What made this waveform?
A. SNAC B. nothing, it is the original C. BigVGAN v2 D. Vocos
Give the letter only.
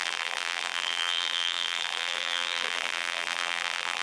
C